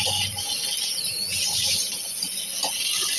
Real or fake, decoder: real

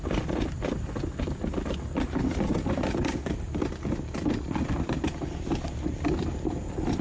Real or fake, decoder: fake, vocoder, BigVGAN v2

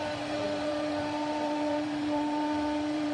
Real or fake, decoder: fake, vocoder, BigVGAN v2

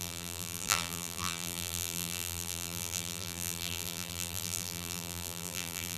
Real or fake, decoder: fake, vocoder, BigVGAN v2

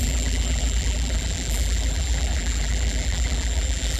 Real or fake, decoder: fake, vocoder, BigVGAN v2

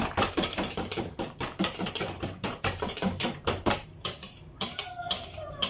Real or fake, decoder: fake, vocoder, BigVGAN v2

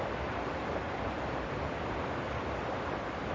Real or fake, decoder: real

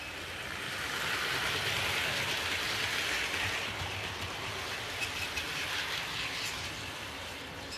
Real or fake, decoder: real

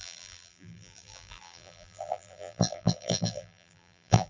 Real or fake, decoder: fake, vocoder, BigVGAN v2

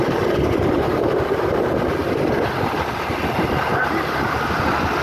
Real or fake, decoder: real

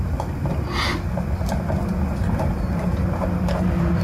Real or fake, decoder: real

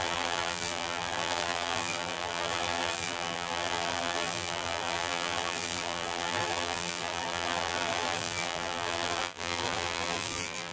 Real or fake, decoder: fake, vocoder, BigVGAN v2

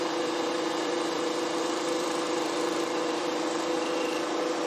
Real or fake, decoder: fake, vocoder, BigVGAN v2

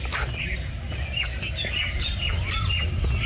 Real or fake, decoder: real